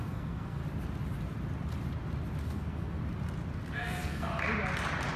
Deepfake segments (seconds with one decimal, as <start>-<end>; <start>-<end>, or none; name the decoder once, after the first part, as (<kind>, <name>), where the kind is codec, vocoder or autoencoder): 0.0-0.6 (codec, SNAC); 2.4-3.0; 3.7-4.3